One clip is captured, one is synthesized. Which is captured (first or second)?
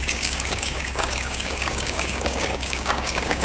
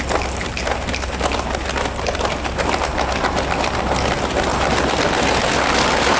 second